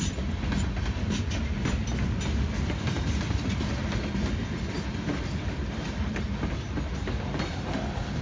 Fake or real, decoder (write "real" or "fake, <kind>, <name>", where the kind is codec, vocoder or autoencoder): real